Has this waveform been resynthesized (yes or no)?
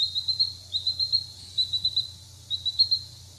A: no